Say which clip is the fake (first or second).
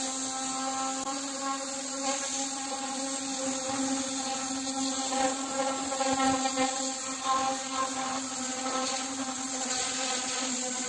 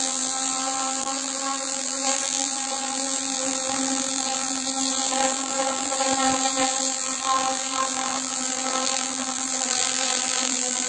second